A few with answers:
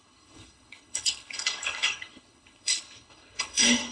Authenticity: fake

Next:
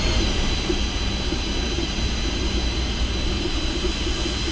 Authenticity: real